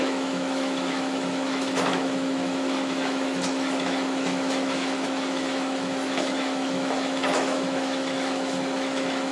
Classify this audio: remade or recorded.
remade